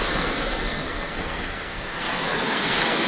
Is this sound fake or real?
fake